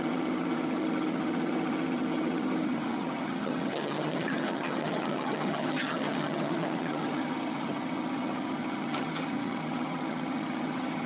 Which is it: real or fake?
fake